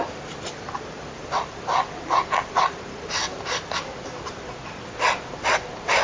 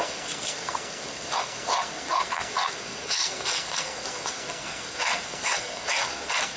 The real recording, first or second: first